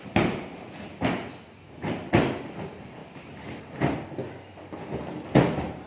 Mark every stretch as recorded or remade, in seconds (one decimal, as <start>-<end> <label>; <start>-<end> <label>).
0.0-5.9 recorded